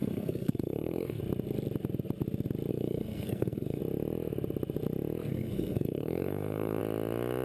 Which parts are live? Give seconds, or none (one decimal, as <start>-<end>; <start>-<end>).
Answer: 1.2-2.7; 3.8-5.3; 6.8-7.4